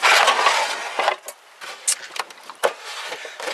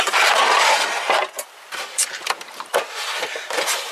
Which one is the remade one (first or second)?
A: second